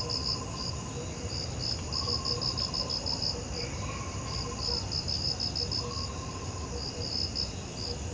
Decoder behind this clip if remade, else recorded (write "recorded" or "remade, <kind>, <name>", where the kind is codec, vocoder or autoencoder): recorded